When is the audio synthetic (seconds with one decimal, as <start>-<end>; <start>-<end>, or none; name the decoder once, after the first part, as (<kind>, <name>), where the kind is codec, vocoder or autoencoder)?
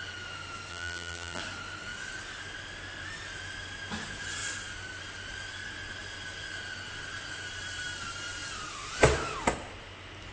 0.7-1.4 (vocoder, BigVGAN v2)